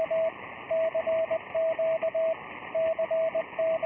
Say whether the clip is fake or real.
real